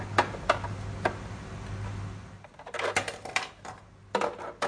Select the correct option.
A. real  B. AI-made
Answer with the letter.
A